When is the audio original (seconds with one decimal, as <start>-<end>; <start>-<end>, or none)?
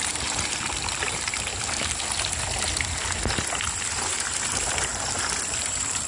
1.3-4.0; 4.9-5.6